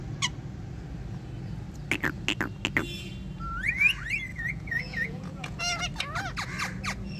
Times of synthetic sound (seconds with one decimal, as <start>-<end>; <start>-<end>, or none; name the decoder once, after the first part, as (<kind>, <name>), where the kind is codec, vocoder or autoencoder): 4.3-5.6 (vocoder, Vocos)